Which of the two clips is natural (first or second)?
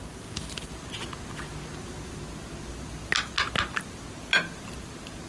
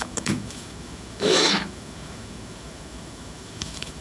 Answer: first